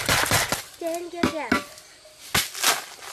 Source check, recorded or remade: recorded